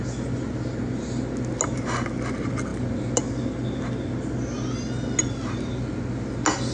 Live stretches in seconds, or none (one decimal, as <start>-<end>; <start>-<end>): 0.0-6.7